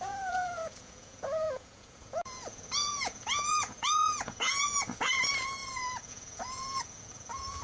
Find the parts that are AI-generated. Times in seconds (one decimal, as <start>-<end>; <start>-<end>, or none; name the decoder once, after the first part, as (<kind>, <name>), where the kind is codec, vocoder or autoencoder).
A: 0.0-7.6 (vocoder, Vocos)